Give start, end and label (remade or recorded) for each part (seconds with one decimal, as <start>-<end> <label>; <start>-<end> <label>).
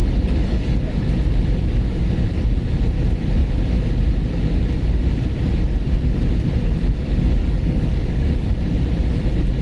0.0-1.1 remade; 1.1-7.4 recorded; 7.4-8.5 remade; 8.5-9.6 recorded